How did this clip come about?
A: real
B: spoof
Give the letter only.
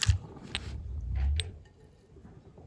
A